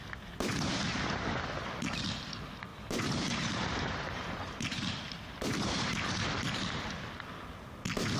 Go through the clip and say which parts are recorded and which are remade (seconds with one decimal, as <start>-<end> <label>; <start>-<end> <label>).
0.0-2.7 recorded; 2.7-6.6 remade; 6.6-8.2 recorded